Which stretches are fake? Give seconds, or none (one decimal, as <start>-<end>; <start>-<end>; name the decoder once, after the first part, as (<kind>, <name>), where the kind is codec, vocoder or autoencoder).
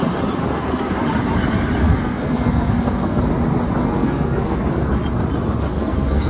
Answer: 0.4-0.9 (codec, SNAC); 1.8-3.2; 3.8-4.9; 5.7-6.3